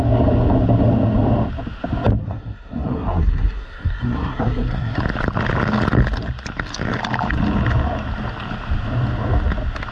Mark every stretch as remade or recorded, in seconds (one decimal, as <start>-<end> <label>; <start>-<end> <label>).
0.0-2.2 recorded; 2.2-5.0 remade; 5.0-9.9 recorded